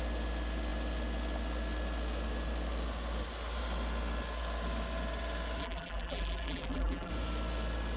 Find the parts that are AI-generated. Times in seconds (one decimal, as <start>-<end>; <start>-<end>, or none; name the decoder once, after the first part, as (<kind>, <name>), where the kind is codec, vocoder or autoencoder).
5.6-7.1 (vocoder, BigVGAN v2)

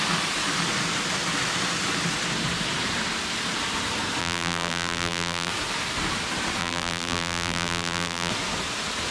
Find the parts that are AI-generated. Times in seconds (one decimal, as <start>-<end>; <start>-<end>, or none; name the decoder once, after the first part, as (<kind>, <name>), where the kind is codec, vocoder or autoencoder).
4.2-5.5 (vocoder, BigVGAN v2); 6.6-8.3

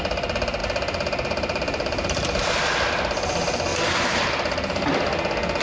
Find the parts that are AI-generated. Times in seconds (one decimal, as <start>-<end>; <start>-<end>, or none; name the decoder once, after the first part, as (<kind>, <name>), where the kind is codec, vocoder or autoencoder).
0.6-2.5 (vocoder, BigVGAN v2); 3.7-4.2

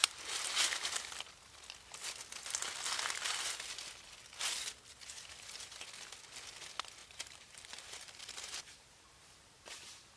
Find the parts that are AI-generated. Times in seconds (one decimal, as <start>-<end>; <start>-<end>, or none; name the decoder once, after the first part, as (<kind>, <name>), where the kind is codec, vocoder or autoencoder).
0.0-0.5 (vocoder, BigVGAN v2); 7.0-9.6

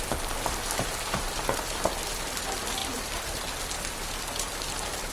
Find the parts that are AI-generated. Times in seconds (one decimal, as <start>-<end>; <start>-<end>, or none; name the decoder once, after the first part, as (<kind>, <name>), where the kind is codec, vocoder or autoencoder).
2.8-3.6 (vocoder, BigVGAN v2)